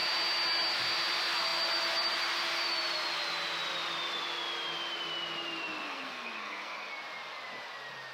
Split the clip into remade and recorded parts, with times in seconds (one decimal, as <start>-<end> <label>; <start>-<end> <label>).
0.0-5.8 recorded; 5.8-6.9 remade; 6.9-8.1 recorded